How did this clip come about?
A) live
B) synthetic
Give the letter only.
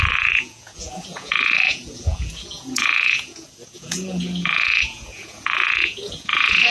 B